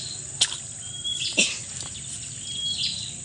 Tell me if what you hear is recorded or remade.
recorded